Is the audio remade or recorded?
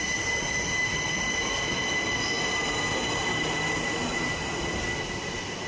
recorded